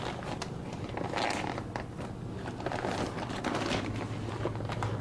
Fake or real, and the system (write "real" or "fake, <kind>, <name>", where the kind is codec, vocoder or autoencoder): real